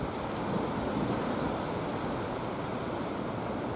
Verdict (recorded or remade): recorded